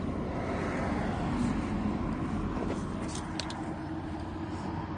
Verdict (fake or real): real